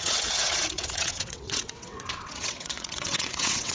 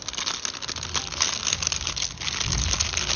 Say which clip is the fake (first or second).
first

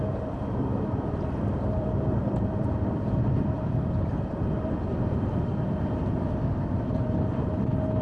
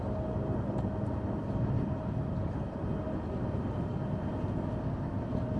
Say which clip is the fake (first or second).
first